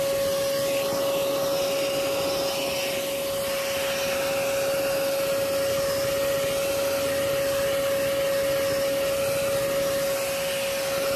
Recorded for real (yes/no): yes